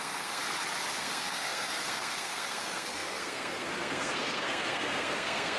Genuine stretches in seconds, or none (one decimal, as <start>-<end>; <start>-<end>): 0.4-1.0